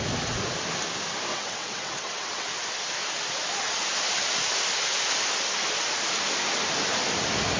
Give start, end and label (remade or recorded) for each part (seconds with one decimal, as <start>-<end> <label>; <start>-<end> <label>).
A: 0.0-1.3 recorded; 1.3-2.5 remade; 2.5-7.6 recorded